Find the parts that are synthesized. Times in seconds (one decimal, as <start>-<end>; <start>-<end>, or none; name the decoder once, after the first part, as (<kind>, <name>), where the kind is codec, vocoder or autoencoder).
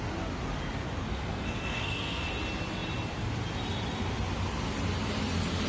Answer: 1.0-2.3 (codec, SNAC)